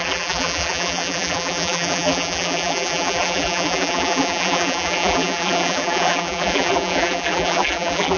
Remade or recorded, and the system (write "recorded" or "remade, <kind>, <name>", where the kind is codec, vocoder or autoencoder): remade, vocoder, BigVGAN v2